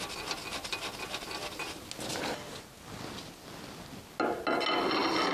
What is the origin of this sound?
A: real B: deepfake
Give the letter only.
A